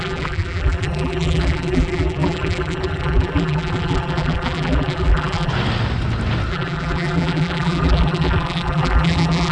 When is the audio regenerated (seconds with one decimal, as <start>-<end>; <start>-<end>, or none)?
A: 0.0-5.5; 6.5-9.5